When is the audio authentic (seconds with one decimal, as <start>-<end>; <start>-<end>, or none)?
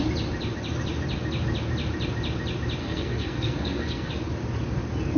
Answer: 0.0-2.8; 4.1-5.2